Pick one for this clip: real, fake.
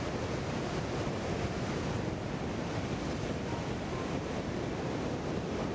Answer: real